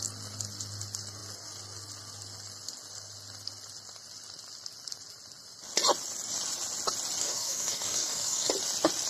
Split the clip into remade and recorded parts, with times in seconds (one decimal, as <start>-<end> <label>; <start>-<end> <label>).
0.0-7.2 recorded; 7.2-8.5 remade; 8.5-9.1 recorded